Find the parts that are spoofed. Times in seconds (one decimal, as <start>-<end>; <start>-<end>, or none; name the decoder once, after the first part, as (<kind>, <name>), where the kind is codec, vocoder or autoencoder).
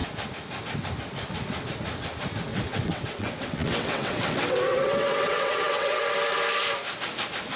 2.5-6.1 (vocoder, WaveNeXt)